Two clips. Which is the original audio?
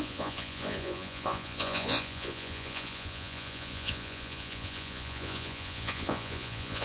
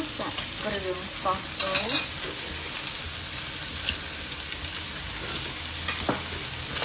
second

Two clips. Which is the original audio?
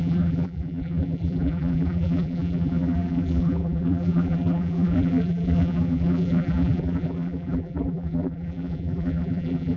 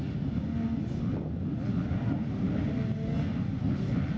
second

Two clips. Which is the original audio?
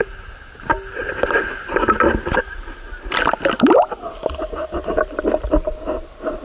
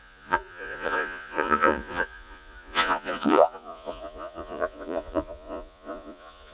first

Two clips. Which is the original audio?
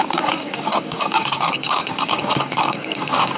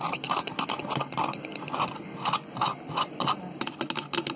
second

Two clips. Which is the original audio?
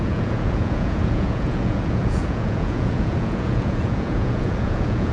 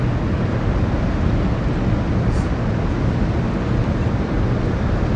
second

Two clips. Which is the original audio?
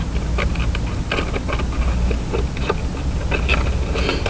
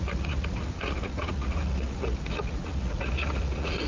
first